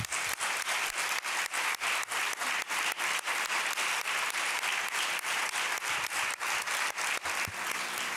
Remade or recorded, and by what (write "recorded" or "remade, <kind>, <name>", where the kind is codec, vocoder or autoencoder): recorded